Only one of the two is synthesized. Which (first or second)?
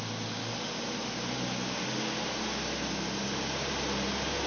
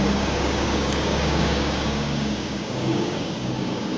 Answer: second